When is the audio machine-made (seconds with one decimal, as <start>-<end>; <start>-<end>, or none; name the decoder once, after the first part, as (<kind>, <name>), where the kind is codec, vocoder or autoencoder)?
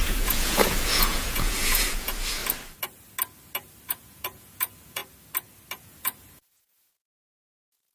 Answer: 0.0-2.4 (vocoder, Vocos); 3.9-5.0; 5.8-7.9